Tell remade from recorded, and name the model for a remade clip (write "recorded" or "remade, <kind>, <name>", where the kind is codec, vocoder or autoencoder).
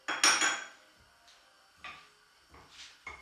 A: recorded